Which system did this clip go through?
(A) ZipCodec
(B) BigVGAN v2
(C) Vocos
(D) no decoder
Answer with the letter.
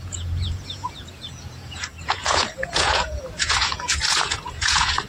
C